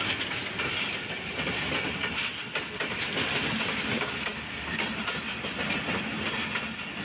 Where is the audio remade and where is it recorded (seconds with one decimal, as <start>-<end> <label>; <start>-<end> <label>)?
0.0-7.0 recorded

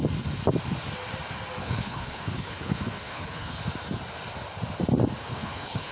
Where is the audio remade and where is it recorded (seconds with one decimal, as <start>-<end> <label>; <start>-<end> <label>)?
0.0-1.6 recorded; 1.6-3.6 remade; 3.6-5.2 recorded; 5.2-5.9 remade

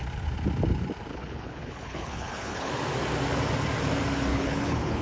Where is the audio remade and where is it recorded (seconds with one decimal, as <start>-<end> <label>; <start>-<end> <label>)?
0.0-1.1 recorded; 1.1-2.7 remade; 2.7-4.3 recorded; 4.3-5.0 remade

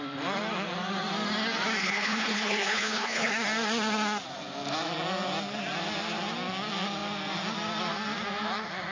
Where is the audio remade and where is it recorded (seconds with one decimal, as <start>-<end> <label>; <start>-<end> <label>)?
0.0-1.8 recorded; 1.8-3.3 remade; 3.3-8.9 recorded

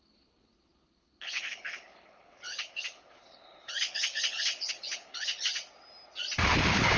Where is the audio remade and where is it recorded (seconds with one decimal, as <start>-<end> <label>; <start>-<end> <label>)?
0.0-5.6 remade; 5.6-6.5 recorded; 6.5-7.0 remade

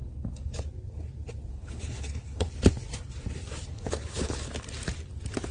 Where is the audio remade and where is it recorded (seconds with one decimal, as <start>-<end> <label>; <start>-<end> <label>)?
0.0-0.6 remade; 0.6-1.5 recorded; 1.5-2.5 remade; 2.5-3.7 recorded; 3.7-4.5 remade; 4.5-5.5 recorded